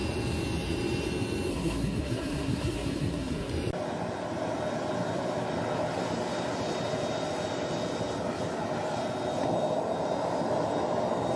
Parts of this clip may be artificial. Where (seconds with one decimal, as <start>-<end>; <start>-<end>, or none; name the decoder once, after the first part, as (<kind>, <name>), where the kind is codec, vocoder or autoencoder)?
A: 1.5-3.5 (codec, SNAC)